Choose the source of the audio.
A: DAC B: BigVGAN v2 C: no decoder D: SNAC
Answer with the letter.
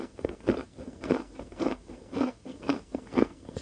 D